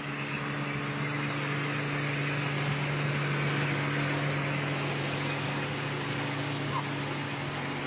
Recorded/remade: recorded